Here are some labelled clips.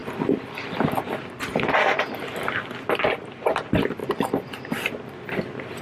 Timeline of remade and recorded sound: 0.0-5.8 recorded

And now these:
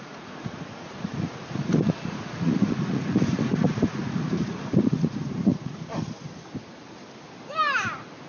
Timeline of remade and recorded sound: 0.0-5.9 remade; 5.9-8.3 recorded

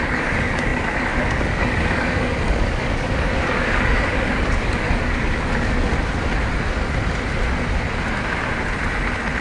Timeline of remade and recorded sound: 0.0-5.9 remade; 5.9-9.4 recorded